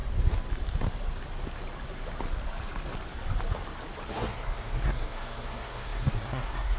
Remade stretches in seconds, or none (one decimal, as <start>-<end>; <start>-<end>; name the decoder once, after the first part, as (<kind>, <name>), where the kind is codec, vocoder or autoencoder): 4.1-6.8 (codec, SNAC)